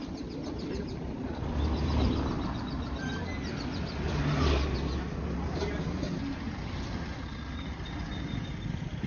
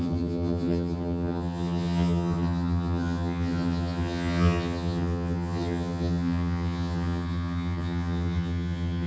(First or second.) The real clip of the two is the first